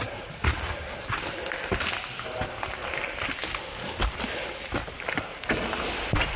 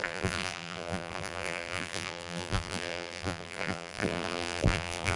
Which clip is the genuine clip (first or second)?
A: first